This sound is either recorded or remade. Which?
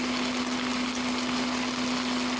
recorded